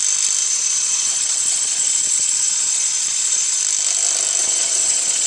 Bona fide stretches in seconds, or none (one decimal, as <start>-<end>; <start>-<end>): 0.0-0.4; 3.6-4.4